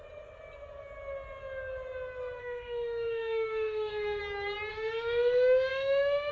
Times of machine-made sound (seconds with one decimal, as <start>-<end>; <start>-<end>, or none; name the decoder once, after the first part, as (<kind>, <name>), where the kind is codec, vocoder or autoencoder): 2.4-4.2 (autoencoder, DAC-VAE); 4.7-6.3